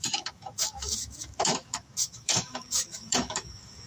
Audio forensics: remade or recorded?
remade